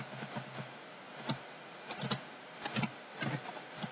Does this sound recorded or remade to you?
recorded